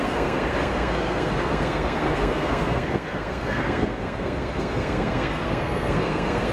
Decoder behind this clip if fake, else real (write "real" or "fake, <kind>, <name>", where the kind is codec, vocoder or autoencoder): fake, codec, SNAC